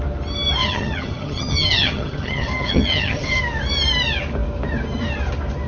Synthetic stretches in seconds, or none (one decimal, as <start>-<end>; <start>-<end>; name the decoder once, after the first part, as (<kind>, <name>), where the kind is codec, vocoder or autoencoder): 0.6-3.4 (vocoder, HiFi-GAN)